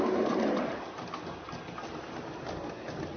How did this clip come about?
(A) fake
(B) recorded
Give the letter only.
B